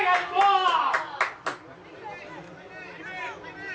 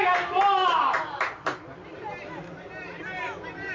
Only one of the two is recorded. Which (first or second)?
first